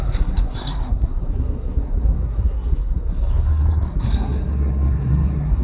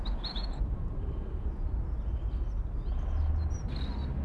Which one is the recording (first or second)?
second